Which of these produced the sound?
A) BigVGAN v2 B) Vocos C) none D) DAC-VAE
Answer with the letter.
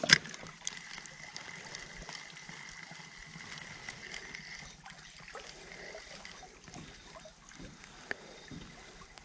C